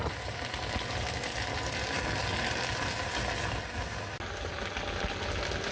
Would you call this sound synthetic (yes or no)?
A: no